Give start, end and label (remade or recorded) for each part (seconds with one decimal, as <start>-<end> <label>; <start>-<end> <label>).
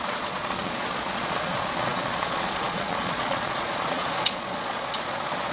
0.0-5.5 remade